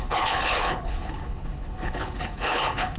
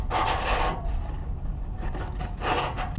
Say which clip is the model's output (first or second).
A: first